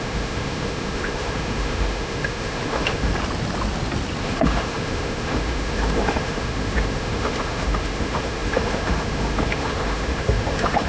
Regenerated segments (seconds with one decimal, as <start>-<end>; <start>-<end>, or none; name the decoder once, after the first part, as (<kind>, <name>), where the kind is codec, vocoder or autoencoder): 0.0-3.1 (autoencoder, DAC-VAE); 4.2-10.9